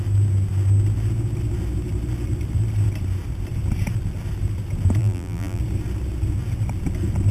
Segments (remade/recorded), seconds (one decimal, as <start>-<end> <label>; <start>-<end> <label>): 0.0-5.0 recorded; 5.0-5.6 remade; 5.6-7.3 recorded